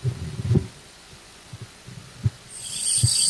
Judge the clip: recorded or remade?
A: remade